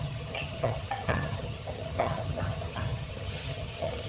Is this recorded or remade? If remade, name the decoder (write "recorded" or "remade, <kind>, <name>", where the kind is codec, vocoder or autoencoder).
remade, vocoder, HiFi-GAN